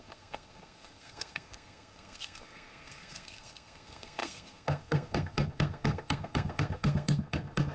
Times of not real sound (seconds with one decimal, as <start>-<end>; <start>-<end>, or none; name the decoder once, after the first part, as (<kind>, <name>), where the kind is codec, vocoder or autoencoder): 0.0-7.7 (codec, SNAC)